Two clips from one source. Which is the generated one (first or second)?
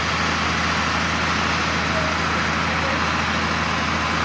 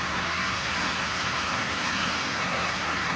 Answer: second